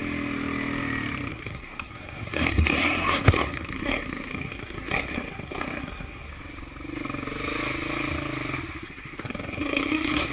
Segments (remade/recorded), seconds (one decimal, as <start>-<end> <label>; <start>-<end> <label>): 0.0-1.3 recorded; 1.3-6.3 remade; 6.3-8.8 recorded; 8.8-10.3 remade